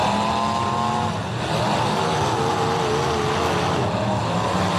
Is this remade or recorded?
recorded